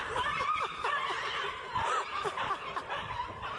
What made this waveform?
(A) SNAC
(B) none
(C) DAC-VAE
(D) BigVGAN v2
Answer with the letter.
D